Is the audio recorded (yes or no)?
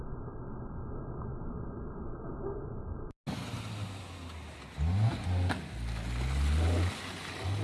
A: yes